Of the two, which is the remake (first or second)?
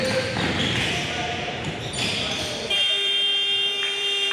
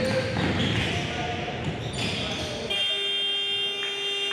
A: first